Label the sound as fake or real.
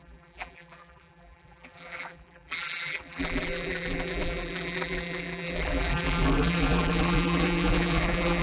fake